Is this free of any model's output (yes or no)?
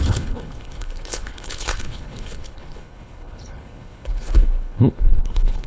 no